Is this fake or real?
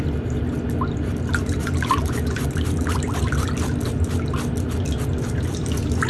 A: real